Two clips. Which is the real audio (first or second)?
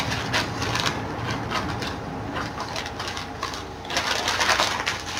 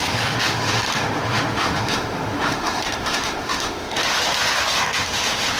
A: first